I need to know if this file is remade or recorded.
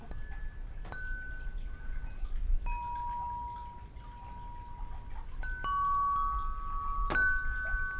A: recorded